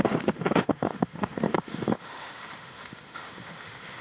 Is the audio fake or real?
fake